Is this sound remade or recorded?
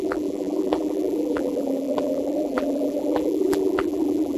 remade